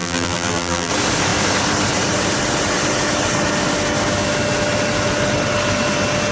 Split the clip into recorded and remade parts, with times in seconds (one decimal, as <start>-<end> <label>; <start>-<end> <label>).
0.0-0.9 remade; 0.9-6.3 recorded